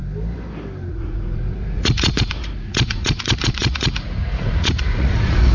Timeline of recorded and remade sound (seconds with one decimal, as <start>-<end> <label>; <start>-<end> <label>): 0.0-0.9 recorded; 0.9-5.5 remade